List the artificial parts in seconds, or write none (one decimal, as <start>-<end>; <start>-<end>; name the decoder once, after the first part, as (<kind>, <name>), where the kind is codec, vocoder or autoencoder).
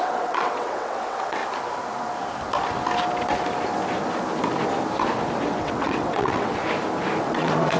0.0-1.4 (vocoder, WaveNeXt); 5.5-6.6; 7.2-7.8